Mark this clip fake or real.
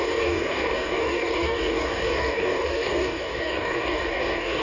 fake